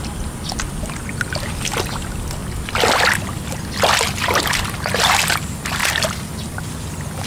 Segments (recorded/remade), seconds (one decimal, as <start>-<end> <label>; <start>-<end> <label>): 0.0-7.3 recorded